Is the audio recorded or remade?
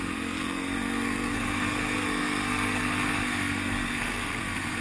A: remade